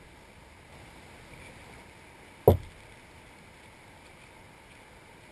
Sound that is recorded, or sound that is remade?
recorded